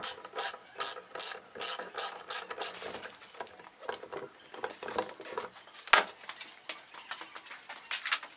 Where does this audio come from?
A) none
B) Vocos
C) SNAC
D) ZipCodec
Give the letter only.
A